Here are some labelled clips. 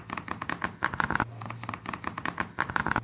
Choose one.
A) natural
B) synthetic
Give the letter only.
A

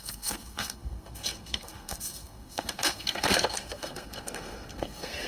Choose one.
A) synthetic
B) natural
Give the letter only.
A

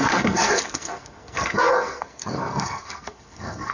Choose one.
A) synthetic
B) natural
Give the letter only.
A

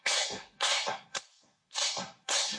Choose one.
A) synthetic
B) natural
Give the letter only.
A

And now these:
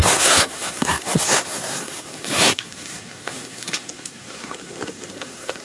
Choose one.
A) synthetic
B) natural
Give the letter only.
A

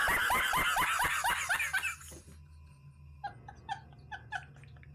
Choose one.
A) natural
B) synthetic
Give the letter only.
A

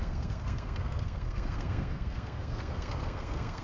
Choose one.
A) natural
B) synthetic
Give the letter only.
B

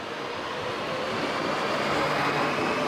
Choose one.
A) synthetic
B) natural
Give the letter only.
B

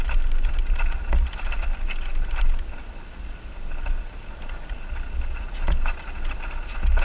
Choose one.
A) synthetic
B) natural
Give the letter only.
B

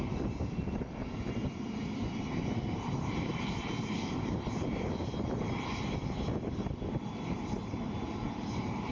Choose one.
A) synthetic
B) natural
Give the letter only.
B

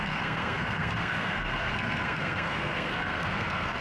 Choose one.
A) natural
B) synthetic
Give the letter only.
B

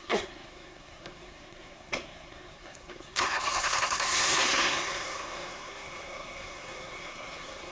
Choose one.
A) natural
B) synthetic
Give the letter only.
B